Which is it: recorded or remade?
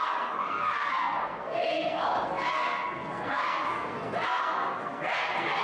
remade